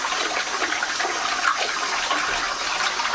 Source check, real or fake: real